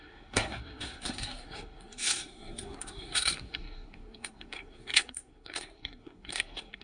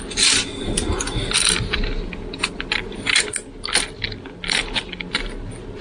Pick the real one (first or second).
second